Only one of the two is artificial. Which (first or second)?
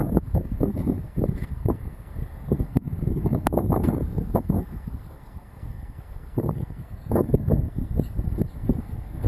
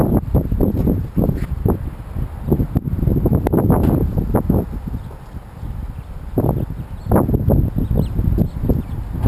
first